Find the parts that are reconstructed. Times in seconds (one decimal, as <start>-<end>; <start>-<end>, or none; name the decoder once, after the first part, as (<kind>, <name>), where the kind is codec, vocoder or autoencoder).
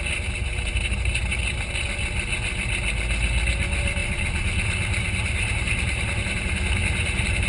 0.0-1.3 (vocoder, BigVGAN v2); 3.5-7.5